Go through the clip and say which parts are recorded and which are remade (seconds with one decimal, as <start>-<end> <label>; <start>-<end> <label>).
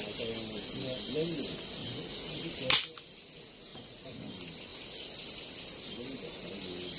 0.0-1.8 recorded; 1.8-2.4 remade; 2.4-3.7 recorded; 3.7-4.3 remade; 4.3-7.0 recorded